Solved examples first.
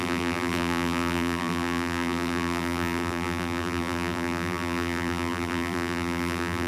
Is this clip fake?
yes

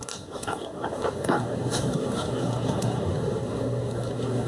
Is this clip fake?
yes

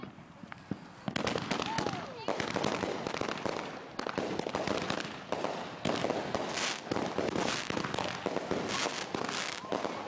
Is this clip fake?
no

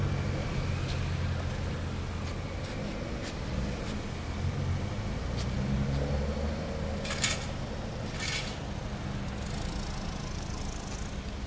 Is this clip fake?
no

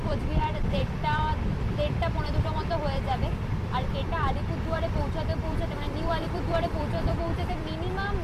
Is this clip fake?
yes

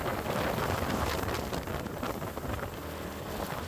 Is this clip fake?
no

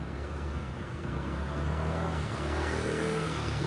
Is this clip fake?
yes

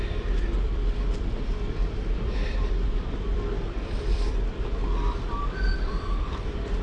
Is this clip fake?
yes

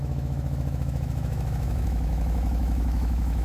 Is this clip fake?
yes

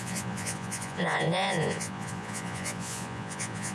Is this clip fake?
yes